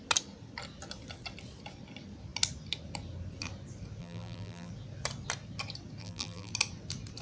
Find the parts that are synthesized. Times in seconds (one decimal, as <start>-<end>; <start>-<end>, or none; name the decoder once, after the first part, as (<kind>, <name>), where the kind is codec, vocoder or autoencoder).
4.0-4.7 (vocoder, BigVGAN v2); 6.0-6.5